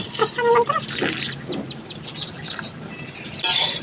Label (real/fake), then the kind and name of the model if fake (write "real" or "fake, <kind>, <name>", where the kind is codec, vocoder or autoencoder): real